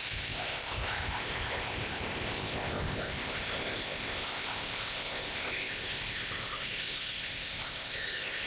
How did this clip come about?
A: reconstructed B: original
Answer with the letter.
A